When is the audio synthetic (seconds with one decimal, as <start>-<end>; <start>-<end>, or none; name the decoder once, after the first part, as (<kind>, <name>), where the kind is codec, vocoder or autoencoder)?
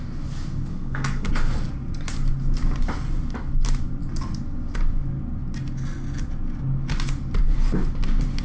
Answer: 0.7-1.3 (codec, SNAC)